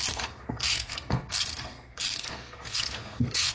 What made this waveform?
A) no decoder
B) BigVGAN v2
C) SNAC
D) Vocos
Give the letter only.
C